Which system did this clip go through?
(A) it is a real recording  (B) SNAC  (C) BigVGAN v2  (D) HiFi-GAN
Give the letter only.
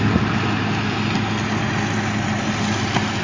A